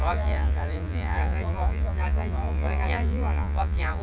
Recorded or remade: remade